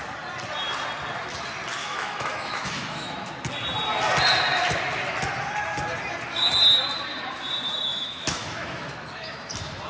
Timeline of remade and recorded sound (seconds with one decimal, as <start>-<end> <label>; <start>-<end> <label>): 0.0-1.8 recorded; 1.8-3.3 remade; 3.3-7.9 recorded; 7.9-9.5 remade; 9.5-9.9 recorded

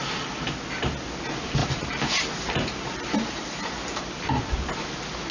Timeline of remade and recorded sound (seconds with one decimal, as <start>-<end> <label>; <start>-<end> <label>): 0.0-1.6 recorded; 1.6-4.0 remade; 4.0-5.3 recorded

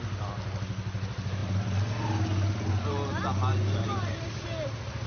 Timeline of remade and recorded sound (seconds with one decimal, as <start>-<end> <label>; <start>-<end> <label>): 0.0-3.5 recorded; 3.5-4.3 remade; 4.3-5.1 recorded

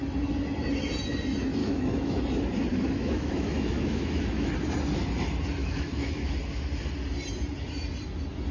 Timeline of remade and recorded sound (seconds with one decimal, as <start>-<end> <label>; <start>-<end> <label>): 0.0-1.6 recorded; 1.6-2.2 remade; 2.2-2.7 recorded; 2.7-4.5 remade; 4.5-5.6 recorded; 5.6-6.3 remade; 6.3-8.5 recorded

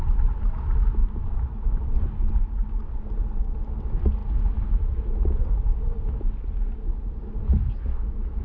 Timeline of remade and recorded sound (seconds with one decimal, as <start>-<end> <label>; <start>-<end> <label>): 0.0-1.0 recorded; 1.0-1.8 remade; 1.8-8.4 recorded

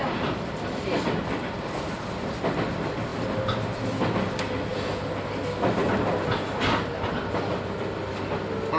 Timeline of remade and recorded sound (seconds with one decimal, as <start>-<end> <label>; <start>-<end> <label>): 0.0-8.8 recorded

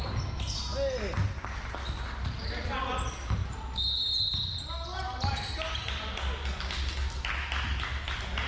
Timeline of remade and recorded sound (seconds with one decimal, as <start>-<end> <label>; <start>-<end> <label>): 0.0-8.5 recorded